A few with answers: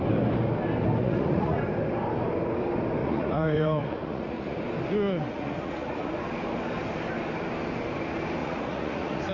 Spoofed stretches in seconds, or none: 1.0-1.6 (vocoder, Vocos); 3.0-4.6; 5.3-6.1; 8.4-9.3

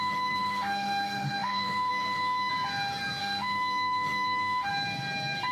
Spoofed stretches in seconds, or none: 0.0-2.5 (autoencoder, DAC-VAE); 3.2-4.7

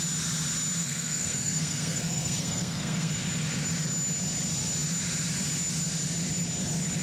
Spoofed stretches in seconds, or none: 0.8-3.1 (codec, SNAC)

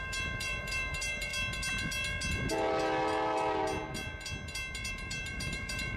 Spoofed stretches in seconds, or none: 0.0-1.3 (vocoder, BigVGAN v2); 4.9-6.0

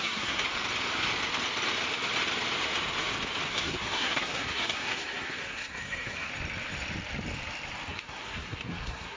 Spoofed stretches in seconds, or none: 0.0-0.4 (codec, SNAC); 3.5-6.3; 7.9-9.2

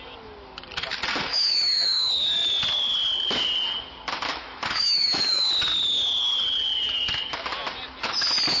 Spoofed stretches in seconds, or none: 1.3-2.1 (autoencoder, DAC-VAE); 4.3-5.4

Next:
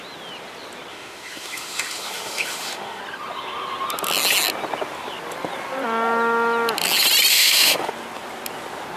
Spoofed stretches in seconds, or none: 0.9-3.0 (autoencoder, DAC-VAE); 7.3-7.9